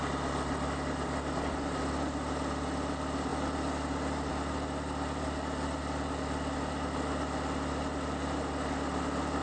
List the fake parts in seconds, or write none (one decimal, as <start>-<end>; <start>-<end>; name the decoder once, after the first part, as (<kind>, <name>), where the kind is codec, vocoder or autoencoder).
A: none

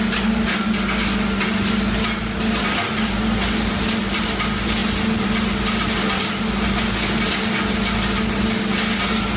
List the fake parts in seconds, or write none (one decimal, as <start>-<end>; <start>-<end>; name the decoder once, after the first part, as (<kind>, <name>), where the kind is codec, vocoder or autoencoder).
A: none

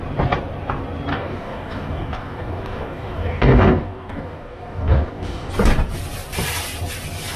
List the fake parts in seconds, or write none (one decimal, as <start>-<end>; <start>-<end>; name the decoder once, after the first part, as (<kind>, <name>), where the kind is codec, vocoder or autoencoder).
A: 1.1-5.5 (codec, DAC)

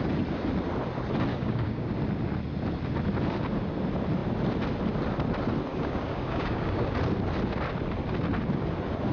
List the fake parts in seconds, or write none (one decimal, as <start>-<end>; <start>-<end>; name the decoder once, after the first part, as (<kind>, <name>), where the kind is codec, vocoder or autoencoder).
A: 1.3-1.9 (codec, DAC); 5.7-6.9